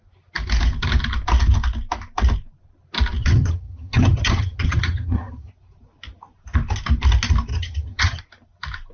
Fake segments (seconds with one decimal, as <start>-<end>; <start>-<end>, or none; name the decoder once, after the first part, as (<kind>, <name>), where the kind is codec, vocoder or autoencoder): 3.2-5.5 (vocoder, HiFi-GAN); 7.5-8.2